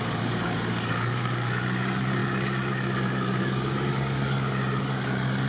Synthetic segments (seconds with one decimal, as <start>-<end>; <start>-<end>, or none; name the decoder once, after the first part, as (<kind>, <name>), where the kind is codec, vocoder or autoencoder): 0.0-5.5 (codec, DAC)